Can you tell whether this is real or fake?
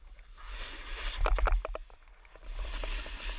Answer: real